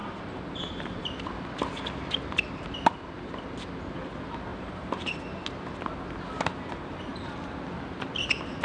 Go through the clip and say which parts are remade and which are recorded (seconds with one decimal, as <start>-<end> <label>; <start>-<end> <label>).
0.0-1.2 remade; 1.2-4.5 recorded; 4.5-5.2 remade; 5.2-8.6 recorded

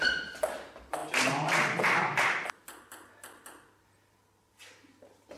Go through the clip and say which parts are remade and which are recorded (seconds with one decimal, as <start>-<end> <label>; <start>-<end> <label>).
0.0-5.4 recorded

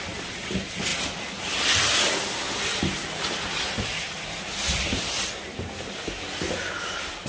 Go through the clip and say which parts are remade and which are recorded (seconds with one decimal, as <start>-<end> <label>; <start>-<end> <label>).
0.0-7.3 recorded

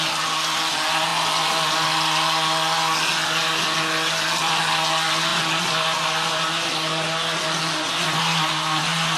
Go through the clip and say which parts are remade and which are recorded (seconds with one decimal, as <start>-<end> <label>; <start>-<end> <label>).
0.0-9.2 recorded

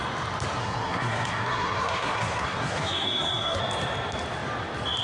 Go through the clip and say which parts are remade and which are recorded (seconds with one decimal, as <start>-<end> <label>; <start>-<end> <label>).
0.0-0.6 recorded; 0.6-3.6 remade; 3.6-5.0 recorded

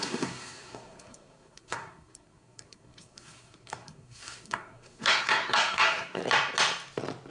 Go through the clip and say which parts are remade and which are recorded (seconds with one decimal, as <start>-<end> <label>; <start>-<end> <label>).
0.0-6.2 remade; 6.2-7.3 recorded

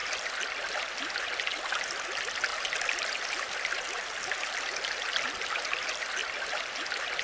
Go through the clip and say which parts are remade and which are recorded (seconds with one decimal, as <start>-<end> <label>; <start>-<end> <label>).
0.0-2.5 recorded; 2.5-4.1 remade; 4.1-7.2 recorded